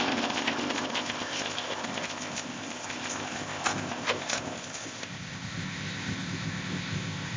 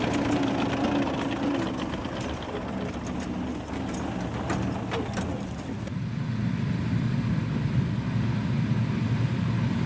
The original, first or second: second